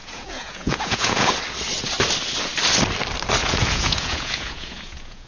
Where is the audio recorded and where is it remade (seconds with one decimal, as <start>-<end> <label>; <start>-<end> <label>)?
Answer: 0.0-1.3 remade; 1.3-3.4 recorded; 3.4-5.3 remade